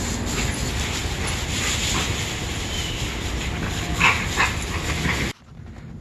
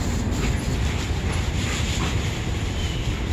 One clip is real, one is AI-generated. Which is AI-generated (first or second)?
second